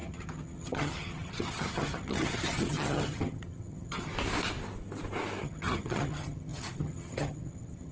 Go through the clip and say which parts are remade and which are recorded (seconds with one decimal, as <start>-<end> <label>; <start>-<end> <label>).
0.0-4.1 remade; 4.1-5.4 recorded; 5.4-7.9 remade